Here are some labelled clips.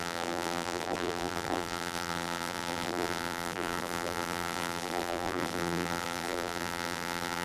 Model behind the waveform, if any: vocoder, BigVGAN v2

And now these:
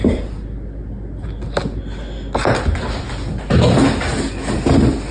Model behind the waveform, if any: none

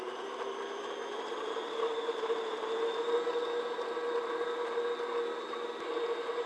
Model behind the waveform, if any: none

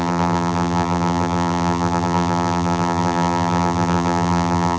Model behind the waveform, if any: vocoder, BigVGAN v2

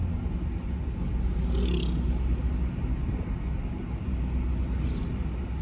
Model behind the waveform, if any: none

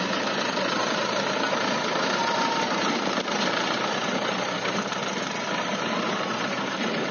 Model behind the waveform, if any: vocoder, BigVGAN v2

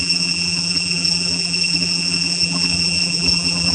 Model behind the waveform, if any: vocoder, BigVGAN v2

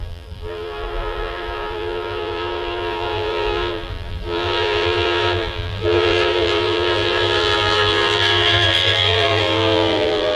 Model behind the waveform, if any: vocoder, BigVGAN v2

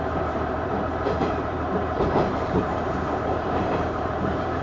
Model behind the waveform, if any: vocoder, BigVGAN v2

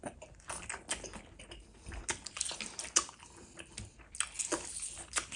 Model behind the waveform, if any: none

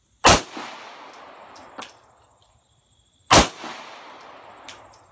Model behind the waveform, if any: none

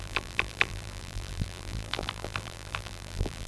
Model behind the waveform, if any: vocoder, BigVGAN v2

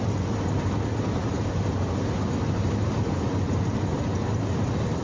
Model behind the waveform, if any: none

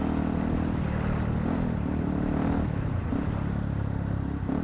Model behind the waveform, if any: none